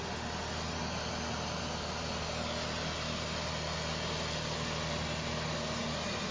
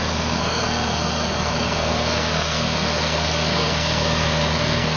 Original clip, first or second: first